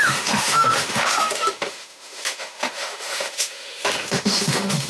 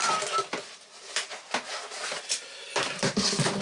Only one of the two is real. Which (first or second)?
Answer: second